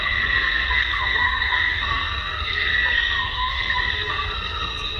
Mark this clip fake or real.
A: fake